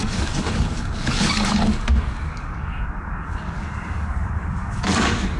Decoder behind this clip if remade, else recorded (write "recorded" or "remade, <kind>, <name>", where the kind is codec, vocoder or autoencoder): remade, codec, DAC